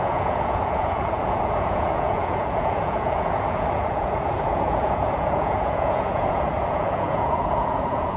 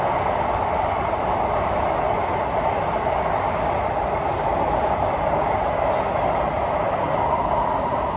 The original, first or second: second